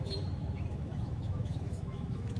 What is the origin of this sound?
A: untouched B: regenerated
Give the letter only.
B